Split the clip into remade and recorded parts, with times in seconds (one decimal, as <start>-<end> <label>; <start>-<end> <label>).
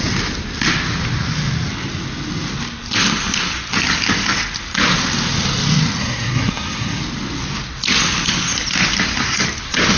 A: 0.0-6.0 recorded; 6.0-7.0 remade; 7.0-10.0 recorded